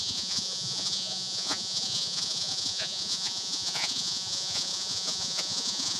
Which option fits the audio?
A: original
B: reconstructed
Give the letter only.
B